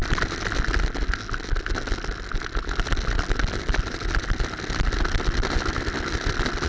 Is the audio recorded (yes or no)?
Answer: yes